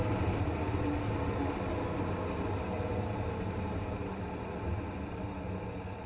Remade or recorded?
recorded